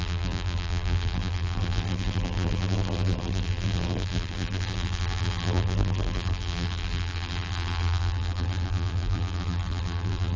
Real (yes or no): no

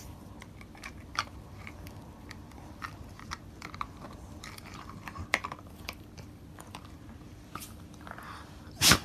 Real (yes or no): no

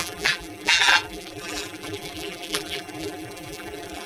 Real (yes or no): no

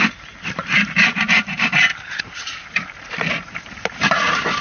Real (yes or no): no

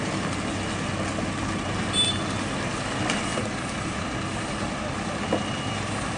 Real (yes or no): yes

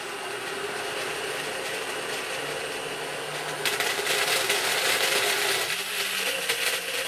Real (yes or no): yes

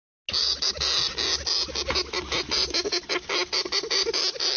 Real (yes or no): yes